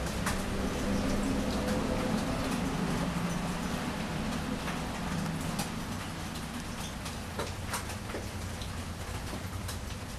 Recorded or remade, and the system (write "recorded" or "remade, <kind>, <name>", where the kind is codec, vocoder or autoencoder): recorded